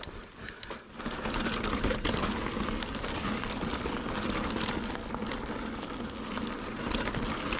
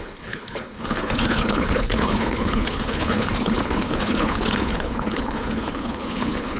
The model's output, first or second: second